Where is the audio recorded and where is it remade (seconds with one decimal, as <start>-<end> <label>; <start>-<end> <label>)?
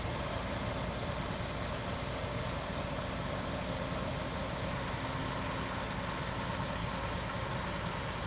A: 0.0-8.3 recorded